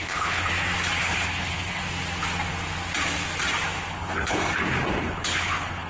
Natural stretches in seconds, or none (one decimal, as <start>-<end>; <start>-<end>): 0.5-1.0; 1.8-3.9; 4.4-5.0